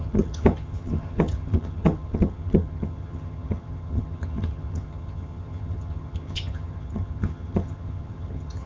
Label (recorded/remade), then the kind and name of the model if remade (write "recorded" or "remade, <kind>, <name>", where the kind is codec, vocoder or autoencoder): remade, vocoder, HiFi-GAN